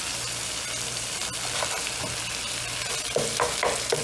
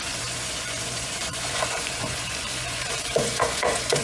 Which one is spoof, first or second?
second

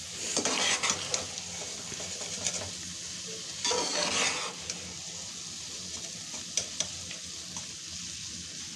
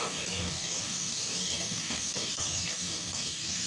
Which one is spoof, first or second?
second